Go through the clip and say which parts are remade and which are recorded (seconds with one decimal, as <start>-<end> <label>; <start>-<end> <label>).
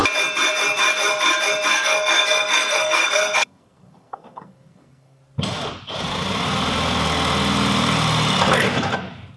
0.0-1.7 recorded; 1.7-5.2 remade; 5.2-9.4 recorded